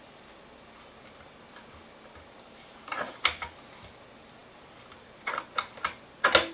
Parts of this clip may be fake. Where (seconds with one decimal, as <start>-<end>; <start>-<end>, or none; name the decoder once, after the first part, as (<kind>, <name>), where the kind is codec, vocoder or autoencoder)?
none